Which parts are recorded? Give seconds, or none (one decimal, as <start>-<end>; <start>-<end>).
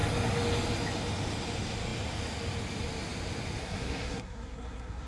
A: 0.0-3.6